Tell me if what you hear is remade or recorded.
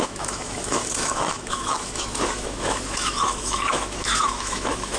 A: remade